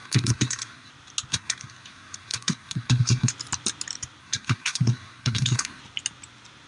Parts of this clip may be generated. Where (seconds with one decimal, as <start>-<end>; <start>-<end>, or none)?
0.0-0.9; 1.3-3.3; 4.2-5.8

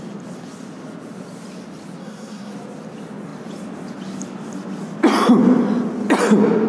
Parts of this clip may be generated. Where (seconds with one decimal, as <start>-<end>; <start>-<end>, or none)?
2.0-2.5